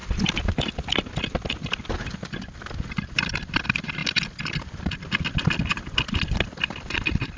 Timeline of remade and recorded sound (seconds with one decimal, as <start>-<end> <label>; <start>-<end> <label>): 0.0-7.4 recorded